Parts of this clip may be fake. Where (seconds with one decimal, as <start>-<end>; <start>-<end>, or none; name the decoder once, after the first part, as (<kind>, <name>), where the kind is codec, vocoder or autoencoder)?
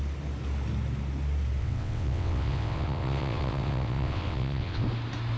1.6-4.8 (vocoder, WaveNeXt)